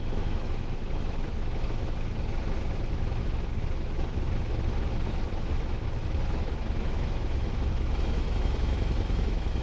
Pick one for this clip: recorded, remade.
remade